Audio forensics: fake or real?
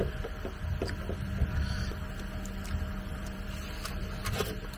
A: real